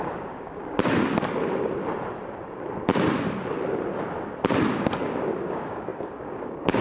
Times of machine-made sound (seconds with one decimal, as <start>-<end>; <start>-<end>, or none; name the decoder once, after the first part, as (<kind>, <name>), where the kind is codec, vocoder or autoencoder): 0.0-0.6 (codec, DAC); 4.7-6.8